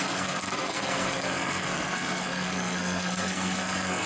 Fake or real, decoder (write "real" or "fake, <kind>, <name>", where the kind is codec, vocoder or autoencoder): fake, codec, SNAC